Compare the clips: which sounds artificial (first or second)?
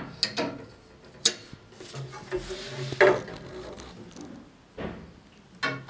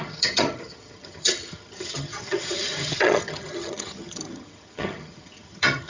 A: second